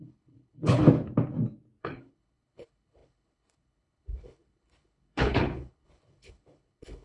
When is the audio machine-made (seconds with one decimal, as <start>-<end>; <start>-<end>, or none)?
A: 0.0-0.8; 1.8-7.0